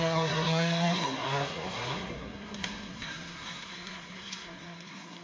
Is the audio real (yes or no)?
no